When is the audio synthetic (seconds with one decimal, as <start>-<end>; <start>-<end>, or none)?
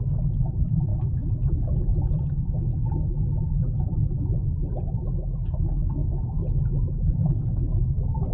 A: none